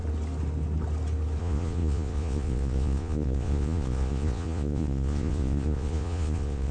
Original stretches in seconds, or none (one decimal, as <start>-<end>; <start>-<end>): 0.0-1.4